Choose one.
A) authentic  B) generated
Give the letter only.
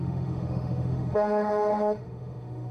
B